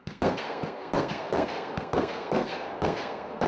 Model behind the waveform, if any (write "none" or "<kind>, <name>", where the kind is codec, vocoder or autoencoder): codec, SNAC